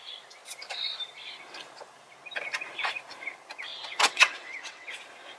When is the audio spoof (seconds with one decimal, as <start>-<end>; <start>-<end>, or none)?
3.7-4.9